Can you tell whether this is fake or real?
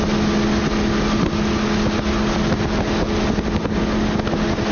real